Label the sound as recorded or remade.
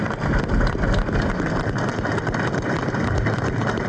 recorded